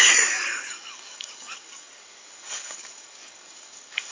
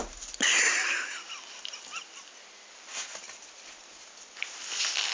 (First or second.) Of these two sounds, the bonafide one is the second